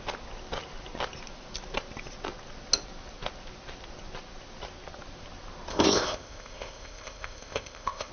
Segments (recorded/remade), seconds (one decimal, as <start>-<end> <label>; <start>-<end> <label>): 0.0-5.7 recorded; 5.7-8.1 remade